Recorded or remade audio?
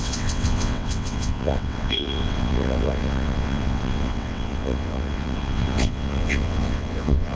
remade